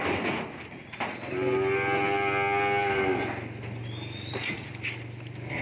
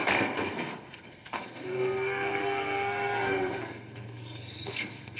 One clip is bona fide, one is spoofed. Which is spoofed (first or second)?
second